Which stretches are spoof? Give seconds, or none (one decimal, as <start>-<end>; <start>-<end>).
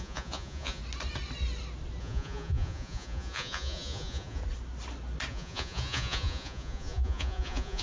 0.0-0.8; 2.0-4.4; 5.3-7.8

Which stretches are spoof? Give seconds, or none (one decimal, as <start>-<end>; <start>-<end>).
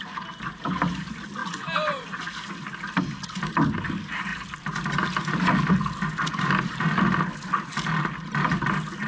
none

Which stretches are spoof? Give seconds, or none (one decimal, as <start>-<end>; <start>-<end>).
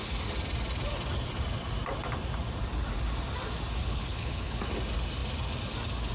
3.8-4.6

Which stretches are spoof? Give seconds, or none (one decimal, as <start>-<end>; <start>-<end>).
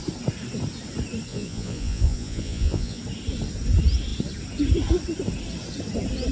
1.3-3.0